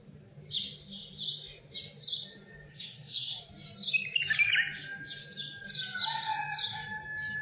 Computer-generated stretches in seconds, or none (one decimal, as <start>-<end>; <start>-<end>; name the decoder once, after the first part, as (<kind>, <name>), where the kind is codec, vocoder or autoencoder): 2.7-3.4 (codec, SNAC)